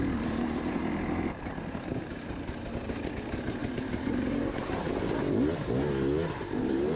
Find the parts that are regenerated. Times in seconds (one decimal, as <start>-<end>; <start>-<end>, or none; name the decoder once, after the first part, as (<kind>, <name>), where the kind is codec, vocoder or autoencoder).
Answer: 0.0-4.9 (vocoder, BigVGAN v2); 6.4-7.0